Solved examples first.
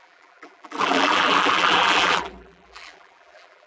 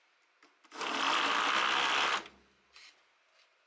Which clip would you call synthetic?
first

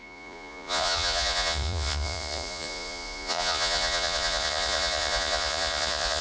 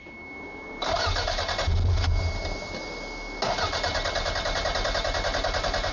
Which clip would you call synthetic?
first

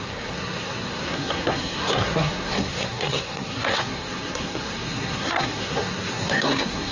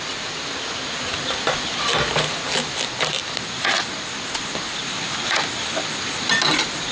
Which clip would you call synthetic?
first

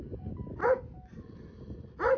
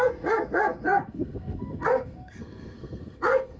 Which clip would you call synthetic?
second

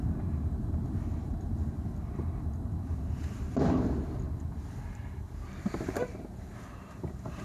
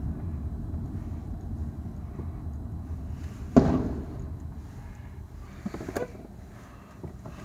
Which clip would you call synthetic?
first